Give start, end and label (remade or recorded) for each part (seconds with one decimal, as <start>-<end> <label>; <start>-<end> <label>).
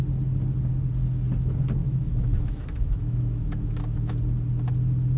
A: 0.0-1.8 recorded; 1.8-4.2 remade; 4.2-5.2 recorded